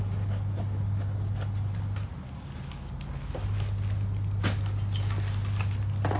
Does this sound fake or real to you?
real